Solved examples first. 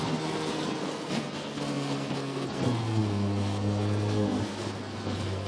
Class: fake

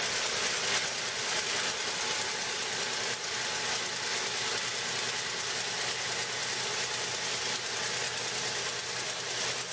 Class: real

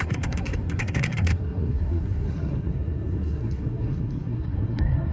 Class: fake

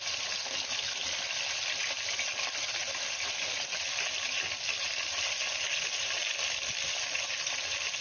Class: real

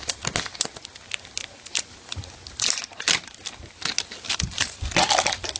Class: real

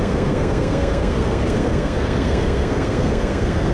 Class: fake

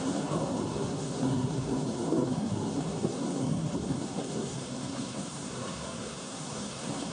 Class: fake